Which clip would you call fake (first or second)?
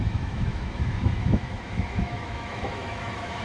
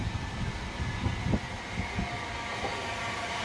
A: first